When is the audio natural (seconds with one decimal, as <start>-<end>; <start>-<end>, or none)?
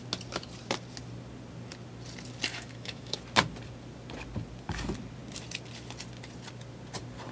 0.0-2.5; 3.2-7.3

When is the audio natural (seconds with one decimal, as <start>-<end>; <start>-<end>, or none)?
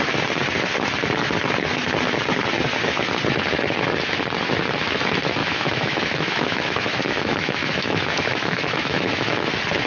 0.0-5.4; 9.5-9.9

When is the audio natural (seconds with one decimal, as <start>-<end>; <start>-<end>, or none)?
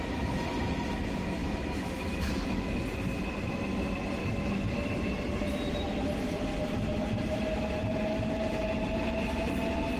0.0-1.4; 2.3-4.2; 5.1-10.0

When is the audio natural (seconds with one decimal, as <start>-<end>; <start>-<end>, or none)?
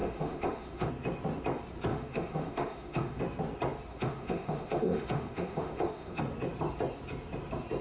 0.9-1.9; 3.2-3.9; 6.2-7.8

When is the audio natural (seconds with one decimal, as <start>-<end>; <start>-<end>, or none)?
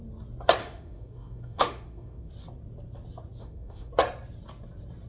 0.0-0.6; 2.3-3.4; 3.9-5.1